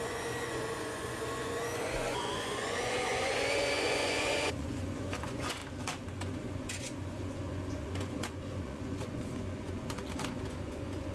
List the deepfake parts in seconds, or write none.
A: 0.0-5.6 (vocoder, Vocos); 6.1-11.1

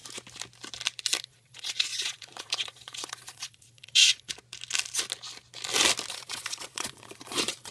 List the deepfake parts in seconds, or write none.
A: 1.2-4.3 (vocoder, Vocos); 6.1-7.7

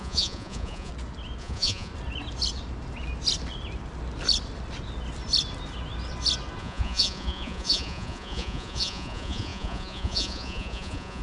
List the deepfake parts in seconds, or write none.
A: 0.0-0.9 (vocoder, Vocos); 1.4-1.9; 6.6-11.2

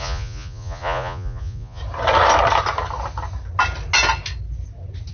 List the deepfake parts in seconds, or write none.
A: 0.0-1.8 (vocoder, Vocos)

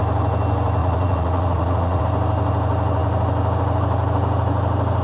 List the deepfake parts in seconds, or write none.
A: 0.8-2.0 (vocoder, Vocos)

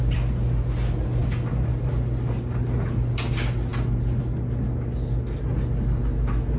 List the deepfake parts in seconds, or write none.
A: none

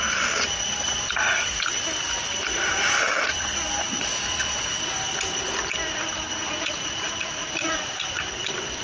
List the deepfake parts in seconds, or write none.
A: 6.4-8.3 (vocoder, Vocos)